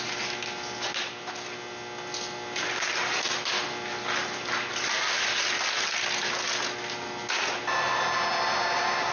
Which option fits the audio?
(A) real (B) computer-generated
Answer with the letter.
A